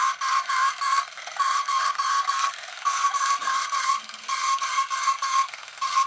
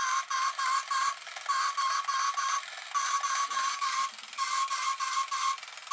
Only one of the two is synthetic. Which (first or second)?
first